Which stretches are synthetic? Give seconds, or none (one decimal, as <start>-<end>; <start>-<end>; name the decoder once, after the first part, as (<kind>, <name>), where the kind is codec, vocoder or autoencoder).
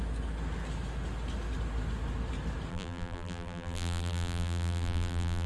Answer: 2.7-5.5 (vocoder, BigVGAN v2)